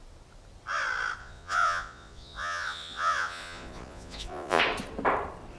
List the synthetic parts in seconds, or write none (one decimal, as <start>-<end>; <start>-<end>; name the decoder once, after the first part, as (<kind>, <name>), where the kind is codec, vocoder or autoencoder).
1.2-4.6 (vocoder, Vocos)